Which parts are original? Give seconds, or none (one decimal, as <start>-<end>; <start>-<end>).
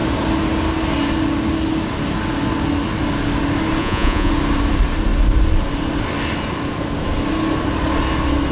0.0-3.8; 4.3-8.5